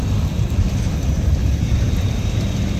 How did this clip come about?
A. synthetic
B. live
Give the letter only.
A